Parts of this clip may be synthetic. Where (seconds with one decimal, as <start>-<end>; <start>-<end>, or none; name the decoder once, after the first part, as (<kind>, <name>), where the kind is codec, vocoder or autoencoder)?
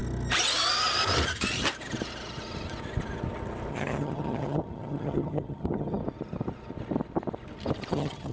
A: 3.7-6.0 (vocoder, HiFi-GAN); 7.9-8.3